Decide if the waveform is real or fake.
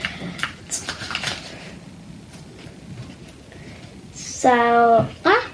real